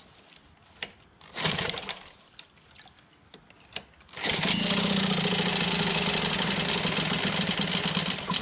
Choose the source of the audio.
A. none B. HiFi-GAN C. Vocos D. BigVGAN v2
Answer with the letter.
A